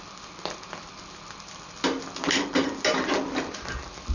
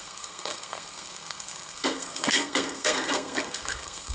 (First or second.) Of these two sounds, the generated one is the second